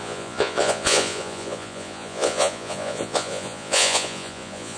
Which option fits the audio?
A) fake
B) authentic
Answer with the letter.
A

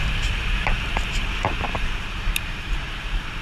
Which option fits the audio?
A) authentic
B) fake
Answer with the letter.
B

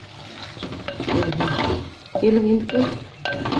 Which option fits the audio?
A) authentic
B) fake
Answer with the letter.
A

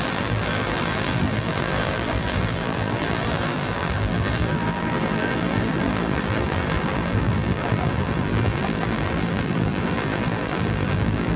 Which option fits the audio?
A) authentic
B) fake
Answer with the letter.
B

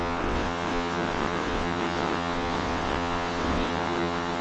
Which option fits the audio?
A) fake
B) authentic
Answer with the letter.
A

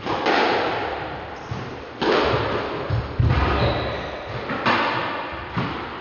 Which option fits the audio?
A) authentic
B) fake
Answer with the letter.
A